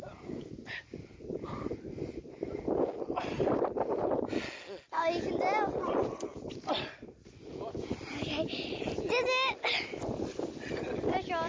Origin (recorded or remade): recorded